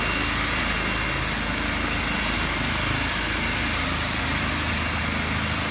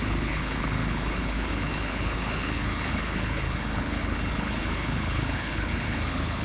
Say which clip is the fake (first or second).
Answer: second